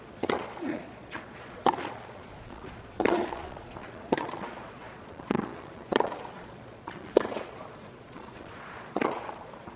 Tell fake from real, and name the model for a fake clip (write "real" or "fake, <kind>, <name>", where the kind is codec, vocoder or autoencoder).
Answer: fake, vocoder, Vocos